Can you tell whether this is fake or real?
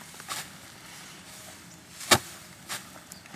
real